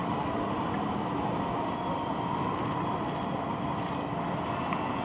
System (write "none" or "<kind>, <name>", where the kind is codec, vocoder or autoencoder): none